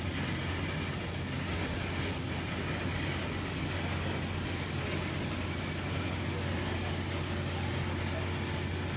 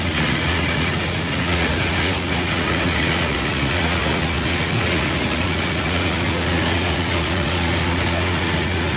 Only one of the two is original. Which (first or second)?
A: first